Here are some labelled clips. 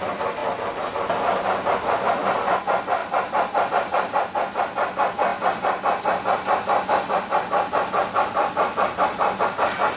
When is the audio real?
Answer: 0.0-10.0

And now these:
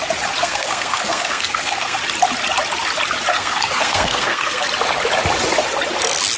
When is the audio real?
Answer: 0.0-0.4; 2.0-3.3; 4.6-6.4

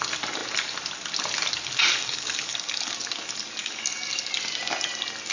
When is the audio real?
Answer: 0.0-1.9; 2.9-3.6; 4.3-5.3

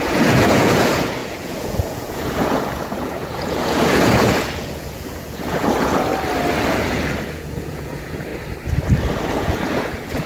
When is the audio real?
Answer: 6.1-6.7; 8.3-9.3